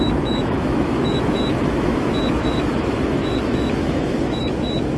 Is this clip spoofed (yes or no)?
yes